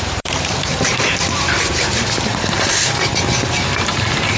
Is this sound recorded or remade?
remade